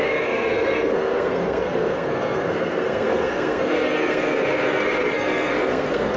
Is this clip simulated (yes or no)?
yes